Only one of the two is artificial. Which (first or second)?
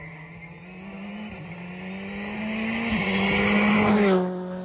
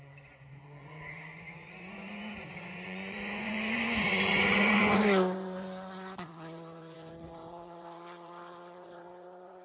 second